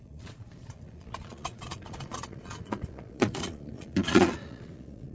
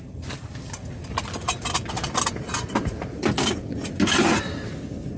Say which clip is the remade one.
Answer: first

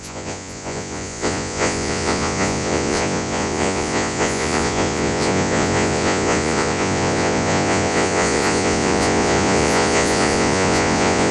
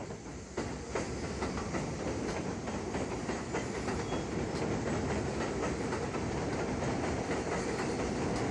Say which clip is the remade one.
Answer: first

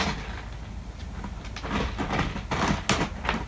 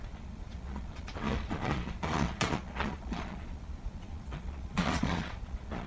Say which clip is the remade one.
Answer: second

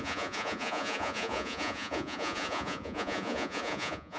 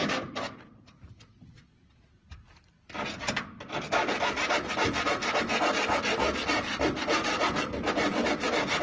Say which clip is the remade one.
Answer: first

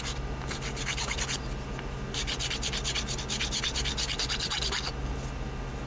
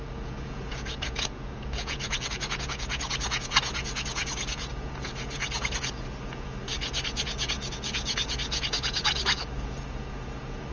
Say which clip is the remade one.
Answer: second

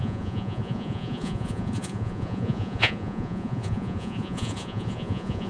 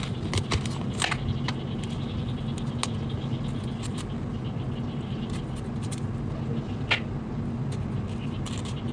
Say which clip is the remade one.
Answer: first